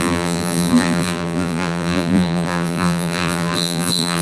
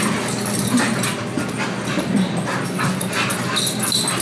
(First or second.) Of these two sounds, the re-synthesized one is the first